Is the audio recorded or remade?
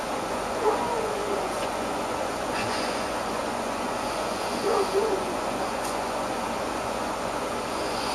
remade